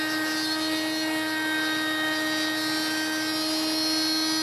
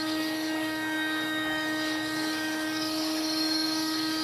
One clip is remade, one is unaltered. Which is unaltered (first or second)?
first